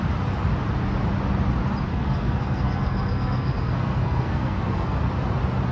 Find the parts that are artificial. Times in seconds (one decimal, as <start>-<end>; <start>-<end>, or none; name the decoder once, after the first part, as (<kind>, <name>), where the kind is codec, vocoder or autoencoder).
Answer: 1.9-5.0 (codec, SNAC)